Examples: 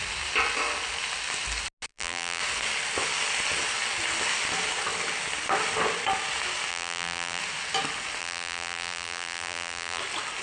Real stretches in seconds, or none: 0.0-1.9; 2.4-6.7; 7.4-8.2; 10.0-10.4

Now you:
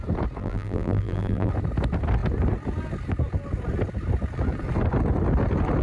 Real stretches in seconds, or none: 0.0-0.4; 1.5-5.8

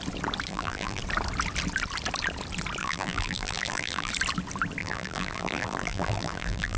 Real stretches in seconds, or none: 0.0-0.5; 1.0-2.8; 4.1-4.8